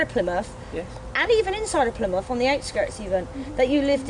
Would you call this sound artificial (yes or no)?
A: no